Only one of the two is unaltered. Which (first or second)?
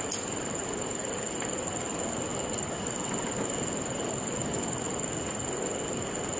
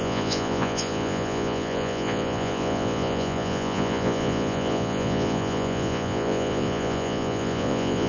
first